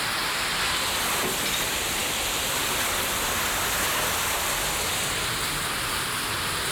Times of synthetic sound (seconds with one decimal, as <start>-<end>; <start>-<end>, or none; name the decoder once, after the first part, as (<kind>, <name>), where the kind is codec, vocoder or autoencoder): none